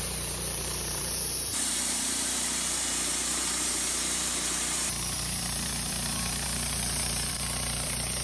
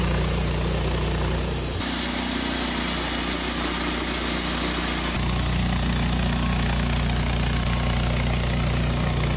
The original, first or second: second